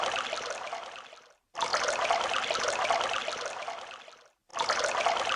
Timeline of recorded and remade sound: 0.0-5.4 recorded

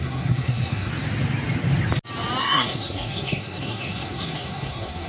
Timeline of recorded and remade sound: 0.0-0.9 remade; 0.9-2.4 recorded; 2.4-5.1 remade

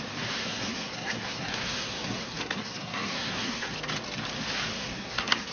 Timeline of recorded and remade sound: 0.0-0.4 recorded; 0.4-3.7 remade; 3.7-4.7 recorded; 4.7-5.5 remade

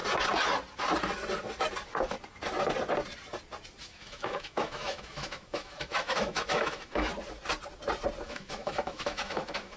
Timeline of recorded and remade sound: 0.0-3.8 recorded; 3.8-7.1 remade; 7.1-8.2 recorded; 8.2-9.8 remade

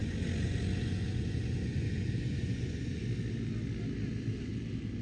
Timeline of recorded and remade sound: 0.0-3.0 remade; 3.0-5.0 recorded